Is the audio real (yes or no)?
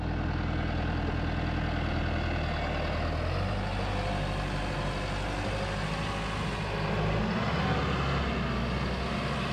yes